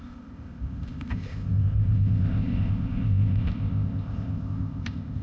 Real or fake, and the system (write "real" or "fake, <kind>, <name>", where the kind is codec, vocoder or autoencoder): fake, codec, ZipCodec